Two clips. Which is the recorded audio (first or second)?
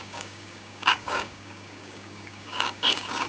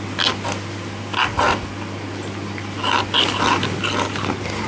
second